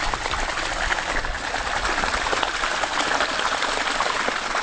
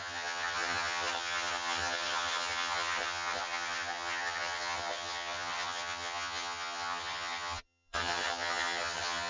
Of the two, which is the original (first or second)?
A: first